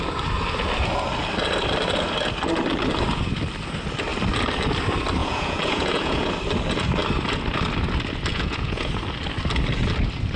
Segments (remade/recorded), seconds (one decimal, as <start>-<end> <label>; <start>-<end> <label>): 0.0-5.2 recorded; 5.2-6.3 remade; 6.3-8.3 recorded; 8.3-8.9 remade; 8.9-10.4 recorded